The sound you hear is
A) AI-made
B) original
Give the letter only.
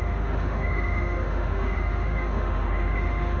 A